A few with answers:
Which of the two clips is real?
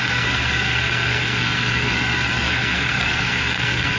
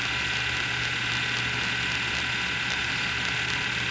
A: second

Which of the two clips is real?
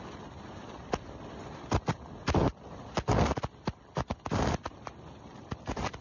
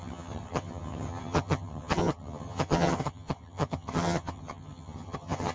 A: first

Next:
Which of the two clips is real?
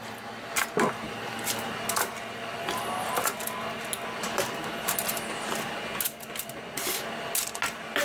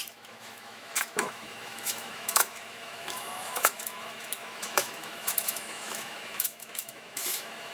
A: first